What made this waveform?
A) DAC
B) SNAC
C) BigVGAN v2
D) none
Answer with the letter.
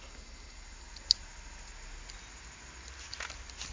D